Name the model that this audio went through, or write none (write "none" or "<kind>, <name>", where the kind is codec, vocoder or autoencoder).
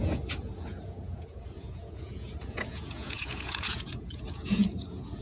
vocoder, Vocos